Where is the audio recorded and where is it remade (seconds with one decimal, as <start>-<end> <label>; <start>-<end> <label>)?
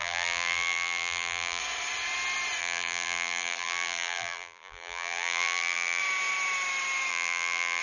0.0-1.6 remade; 1.6-2.6 recorded; 2.6-6.0 remade; 6.0-7.1 recorded; 7.1-7.8 remade